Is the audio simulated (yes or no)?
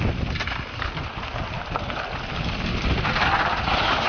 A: no